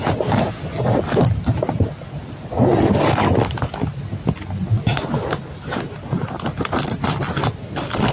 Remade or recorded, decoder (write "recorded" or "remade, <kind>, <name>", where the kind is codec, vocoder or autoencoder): recorded